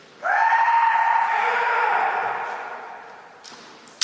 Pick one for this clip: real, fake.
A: fake